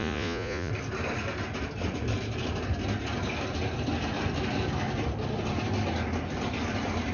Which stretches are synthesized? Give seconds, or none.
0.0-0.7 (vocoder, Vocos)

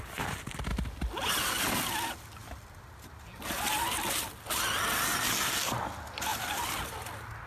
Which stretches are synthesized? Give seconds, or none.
0.7-1.3 (vocoder, BigVGAN v2); 6.3-7.1

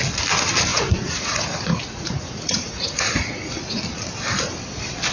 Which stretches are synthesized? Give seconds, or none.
0.7-3.8 (vocoder, Vocos)

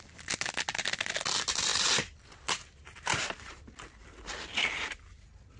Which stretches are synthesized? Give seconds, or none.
1.7-3.6 (vocoder, BigVGAN v2)

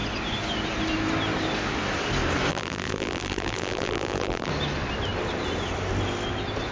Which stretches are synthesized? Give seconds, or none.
2.5-4.5 (vocoder, BigVGAN v2)

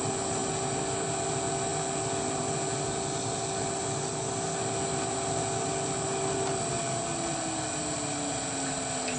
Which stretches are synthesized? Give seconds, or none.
none